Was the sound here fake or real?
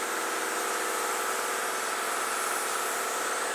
real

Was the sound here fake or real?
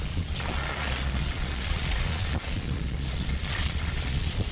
fake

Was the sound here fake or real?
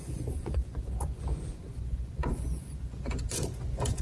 fake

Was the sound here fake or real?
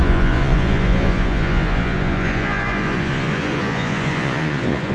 fake